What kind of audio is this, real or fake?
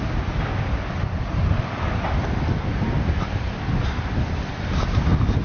real